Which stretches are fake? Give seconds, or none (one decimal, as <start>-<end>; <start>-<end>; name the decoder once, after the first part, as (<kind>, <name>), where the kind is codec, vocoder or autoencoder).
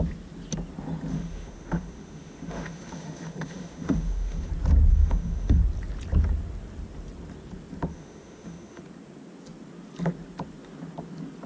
1.1-4.5 (autoencoder, DAC-VAE); 4.9-5.6; 7.9-8.8